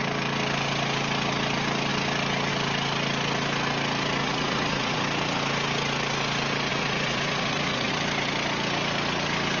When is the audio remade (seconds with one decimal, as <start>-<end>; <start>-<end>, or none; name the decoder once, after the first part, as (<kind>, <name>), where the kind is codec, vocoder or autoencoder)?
4.2-5.0 (vocoder, Vocos); 6.7-7.9